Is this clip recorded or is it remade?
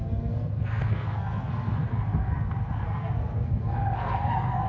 remade